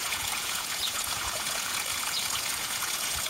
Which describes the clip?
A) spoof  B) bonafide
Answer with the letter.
A